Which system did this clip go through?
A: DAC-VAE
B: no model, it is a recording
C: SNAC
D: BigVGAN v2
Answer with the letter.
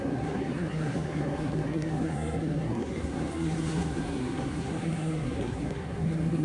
C